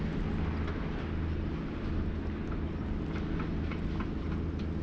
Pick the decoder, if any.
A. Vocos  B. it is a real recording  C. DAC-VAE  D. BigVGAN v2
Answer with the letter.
B